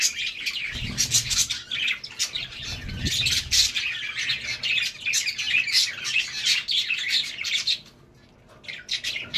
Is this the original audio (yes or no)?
yes